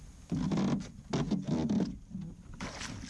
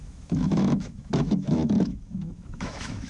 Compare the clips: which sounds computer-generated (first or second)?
second